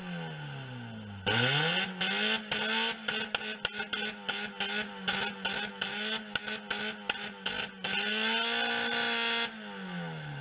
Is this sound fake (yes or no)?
no